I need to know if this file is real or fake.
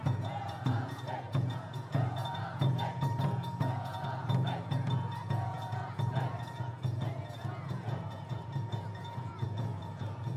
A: fake